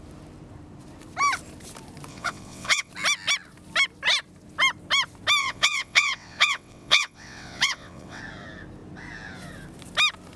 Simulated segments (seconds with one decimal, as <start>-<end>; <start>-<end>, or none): 2.1-2.9; 5.4-8.2